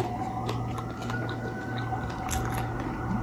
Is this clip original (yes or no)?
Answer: yes